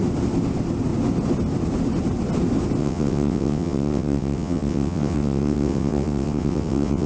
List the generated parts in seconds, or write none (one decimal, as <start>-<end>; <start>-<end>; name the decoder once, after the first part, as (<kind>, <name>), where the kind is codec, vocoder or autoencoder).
2.8-7.1 (vocoder, WaveNeXt)